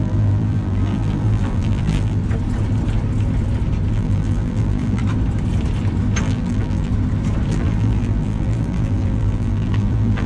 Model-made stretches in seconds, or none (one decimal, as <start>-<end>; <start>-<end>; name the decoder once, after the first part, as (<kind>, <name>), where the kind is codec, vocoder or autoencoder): 0.0-2.2 (vocoder, BigVGAN v2); 3.9-5.0; 6.2-6.9; 7.5-10.3

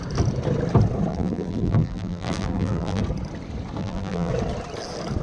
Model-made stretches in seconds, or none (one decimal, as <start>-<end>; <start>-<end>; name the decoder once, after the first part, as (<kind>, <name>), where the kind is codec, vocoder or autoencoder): 1.1-3.0 (vocoder, BigVGAN v2); 3.8-4.3

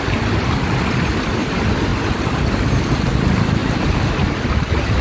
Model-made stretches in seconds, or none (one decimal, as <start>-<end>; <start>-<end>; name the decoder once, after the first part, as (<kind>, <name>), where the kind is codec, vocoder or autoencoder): 3.6-4.1 (vocoder, BigVGAN v2)

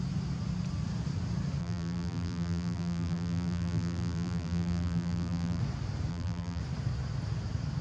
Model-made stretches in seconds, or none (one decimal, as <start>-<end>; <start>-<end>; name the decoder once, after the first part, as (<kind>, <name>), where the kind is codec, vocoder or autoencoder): 1.6-5.6 (vocoder, BigVGAN v2); 6.1-6.6